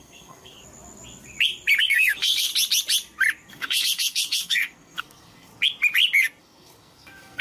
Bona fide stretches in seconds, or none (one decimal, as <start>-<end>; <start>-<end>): 0.6-1.8; 2.5-3.5; 5.5-6.4